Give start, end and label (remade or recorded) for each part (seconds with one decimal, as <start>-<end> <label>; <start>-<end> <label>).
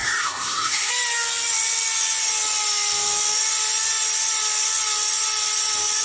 0.0-0.9 remade; 0.9-6.0 recorded